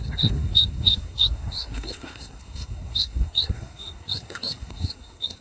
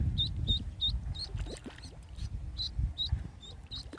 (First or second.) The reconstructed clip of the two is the first